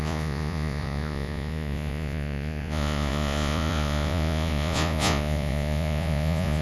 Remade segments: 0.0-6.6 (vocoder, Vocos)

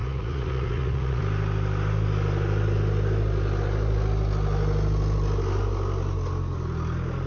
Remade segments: 0.0-1.2 (vocoder, Vocos)

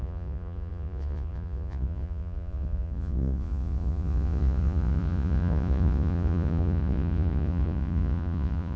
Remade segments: 0.0-8.8 (vocoder, Vocos)

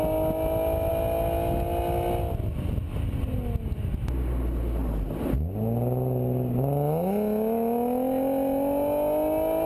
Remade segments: none

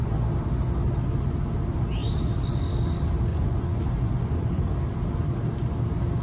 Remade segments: 3.3-4.6 (vocoder, Vocos)